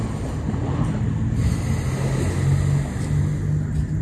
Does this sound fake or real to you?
real